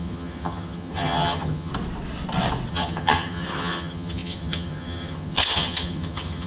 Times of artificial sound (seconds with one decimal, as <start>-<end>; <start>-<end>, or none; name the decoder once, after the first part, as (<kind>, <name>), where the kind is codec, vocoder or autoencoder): 0.0-1.7 (vocoder, HiFi-GAN); 2.7-6.5